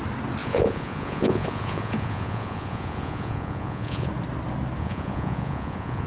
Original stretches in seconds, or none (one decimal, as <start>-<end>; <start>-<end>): 0.0-0.4; 4.1-4.8